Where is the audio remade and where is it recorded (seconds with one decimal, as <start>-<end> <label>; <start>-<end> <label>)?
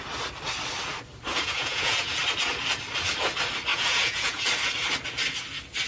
0.0-1.3 recorded; 1.3-2.2 remade; 2.2-3.7 recorded; 3.7-4.5 remade; 4.5-5.9 recorded